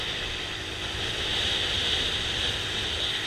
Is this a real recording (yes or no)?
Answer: yes